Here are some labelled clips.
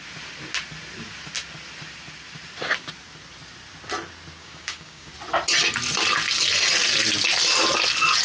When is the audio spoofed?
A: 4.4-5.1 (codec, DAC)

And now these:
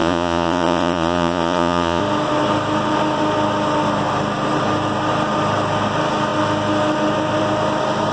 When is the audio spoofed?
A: 0.0-2.0 (vocoder, Vocos)

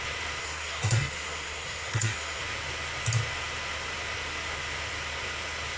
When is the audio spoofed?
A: 0.4-2.4 (codec, SNAC)